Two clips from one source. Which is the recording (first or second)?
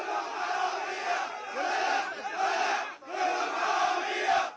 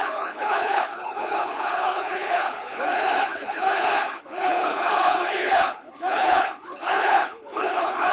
first